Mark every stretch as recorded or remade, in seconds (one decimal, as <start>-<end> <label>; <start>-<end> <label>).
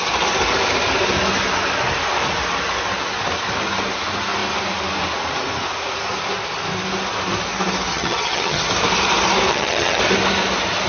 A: 0.0-7.9 recorded; 7.9-8.6 remade; 8.6-9.5 recorded; 9.5-10.0 remade; 10.0-10.9 recorded